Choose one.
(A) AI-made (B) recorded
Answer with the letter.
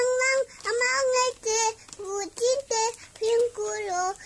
B